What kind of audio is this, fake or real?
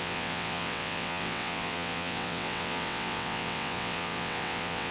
fake